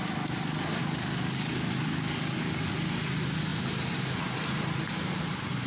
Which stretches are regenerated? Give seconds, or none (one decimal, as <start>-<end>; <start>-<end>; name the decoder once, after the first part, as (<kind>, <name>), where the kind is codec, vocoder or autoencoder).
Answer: 0.8-2.7 (codec, DAC)

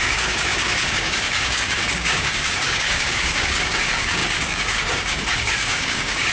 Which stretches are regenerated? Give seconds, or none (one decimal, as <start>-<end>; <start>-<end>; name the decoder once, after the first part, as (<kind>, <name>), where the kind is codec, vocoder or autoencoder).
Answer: 0.0-6.3 (codec, DAC)

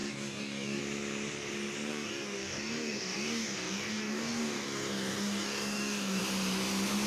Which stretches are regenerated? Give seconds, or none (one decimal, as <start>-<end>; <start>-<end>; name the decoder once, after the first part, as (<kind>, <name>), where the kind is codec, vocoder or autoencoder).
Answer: 0.0-0.8 (codec, DAC); 1.9-6.2

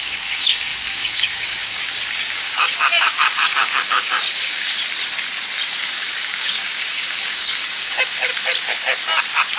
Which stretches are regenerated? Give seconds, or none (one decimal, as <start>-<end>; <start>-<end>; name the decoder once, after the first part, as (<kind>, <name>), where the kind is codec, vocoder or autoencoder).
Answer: 0.0-4.8 (codec, DAC); 5.8-8.3

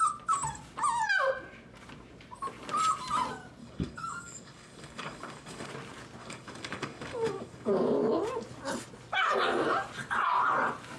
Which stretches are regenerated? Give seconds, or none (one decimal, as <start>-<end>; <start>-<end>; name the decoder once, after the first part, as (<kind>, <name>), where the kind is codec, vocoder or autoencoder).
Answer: 3.6-5.7 (codec, DAC); 6.2-7.7